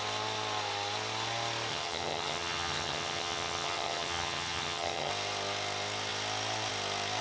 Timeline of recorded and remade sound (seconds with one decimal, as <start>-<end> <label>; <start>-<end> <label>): 0.0-1.7 recorded; 1.7-5.1 remade; 5.1-7.2 recorded

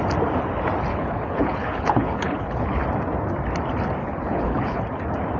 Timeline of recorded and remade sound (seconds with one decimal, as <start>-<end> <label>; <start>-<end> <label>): 0.0-0.9 recorded; 0.9-2.8 remade; 2.8-4.0 recorded; 4.0-4.8 remade; 4.8-5.4 recorded

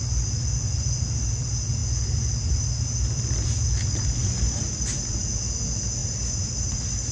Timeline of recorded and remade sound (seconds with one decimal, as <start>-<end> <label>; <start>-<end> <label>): 0.0-4.2 recorded; 4.2-5.1 remade; 5.1-6.0 recorded; 6.0-7.1 remade

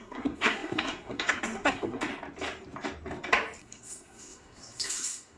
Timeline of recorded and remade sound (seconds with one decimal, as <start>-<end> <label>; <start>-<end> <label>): 0.0-2.1 remade; 2.1-3.6 recorded; 3.6-5.4 remade

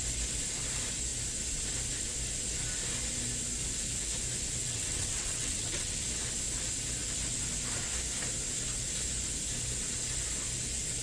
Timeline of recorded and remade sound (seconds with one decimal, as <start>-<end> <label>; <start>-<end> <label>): 0.0-4.6 recorded; 4.6-6.0 remade; 6.0-11.0 recorded

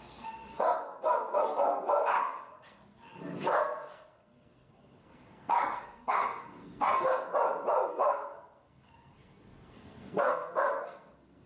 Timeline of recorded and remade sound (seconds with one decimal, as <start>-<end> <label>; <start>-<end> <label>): 0.0-7.3 remade; 7.3-7.9 recorded; 7.9-11.5 remade